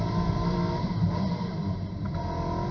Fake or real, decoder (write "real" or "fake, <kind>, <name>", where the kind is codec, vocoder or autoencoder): real